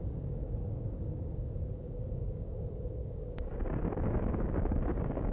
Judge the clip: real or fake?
fake